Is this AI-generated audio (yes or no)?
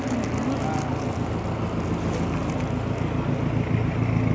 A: no